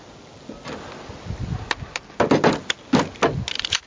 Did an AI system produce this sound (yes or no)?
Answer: no